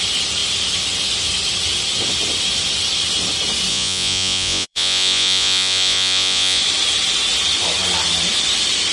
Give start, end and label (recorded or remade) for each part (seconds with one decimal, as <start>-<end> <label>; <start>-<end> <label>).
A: 0.0-3.7 recorded; 3.7-6.6 remade; 6.6-8.9 recorded